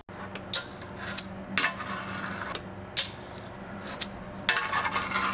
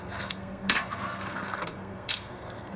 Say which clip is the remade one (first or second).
second